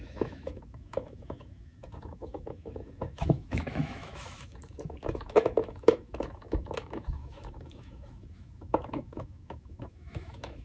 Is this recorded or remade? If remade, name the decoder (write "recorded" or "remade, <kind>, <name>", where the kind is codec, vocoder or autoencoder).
remade, autoencoder, DAC-VAE